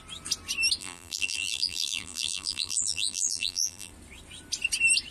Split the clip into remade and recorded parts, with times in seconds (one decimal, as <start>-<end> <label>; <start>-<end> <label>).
0.0-0.8 recorded; 0.8-3.9 remade; 3.9-5.1 recorded